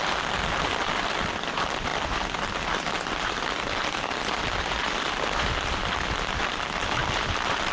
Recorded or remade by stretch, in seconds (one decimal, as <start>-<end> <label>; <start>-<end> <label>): 0.0-0.8 recorded; 0.8-1.9 remade; 1.9-4.6 recorded; 4.6-5.8 remade; 5.8-6.4 recorded; 6.4-7.7 remade